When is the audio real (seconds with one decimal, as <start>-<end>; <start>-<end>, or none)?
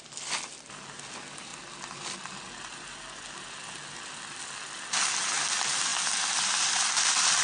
1.5-5.4; 5.9-6.4